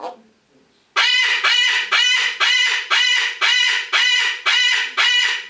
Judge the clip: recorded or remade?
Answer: recorded